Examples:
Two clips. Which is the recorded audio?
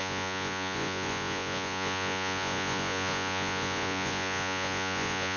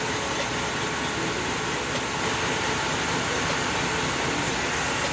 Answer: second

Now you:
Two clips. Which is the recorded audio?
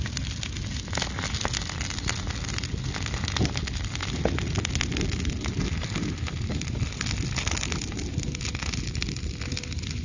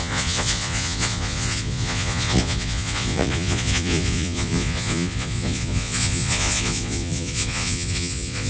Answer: first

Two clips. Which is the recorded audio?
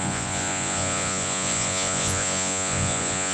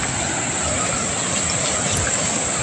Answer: second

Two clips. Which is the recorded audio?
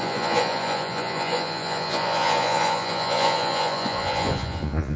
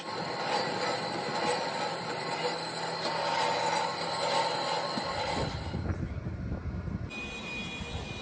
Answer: second